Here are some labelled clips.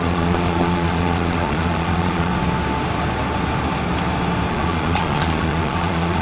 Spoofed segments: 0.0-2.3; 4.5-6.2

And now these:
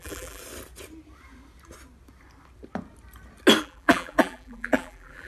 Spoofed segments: 0.0-0.4; 3.6-5.3

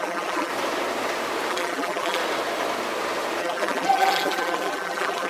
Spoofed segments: 0.0-0.5; 1.5-2.2; 3.4-5.3